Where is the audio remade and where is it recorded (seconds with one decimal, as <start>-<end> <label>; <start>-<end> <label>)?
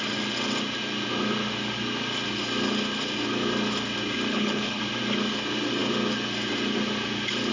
0.0-4.3 recorded; 4.3-4.8 remade; 4.8-7.5 recorded